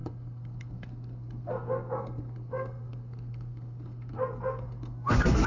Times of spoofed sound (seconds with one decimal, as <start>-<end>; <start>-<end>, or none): 0.0-5.5